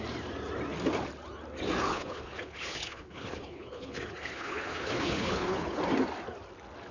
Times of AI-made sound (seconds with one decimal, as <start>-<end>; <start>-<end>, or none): 1.9-5.8